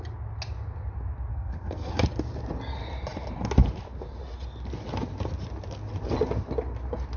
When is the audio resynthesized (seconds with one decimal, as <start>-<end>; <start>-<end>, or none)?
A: 1.3-1.9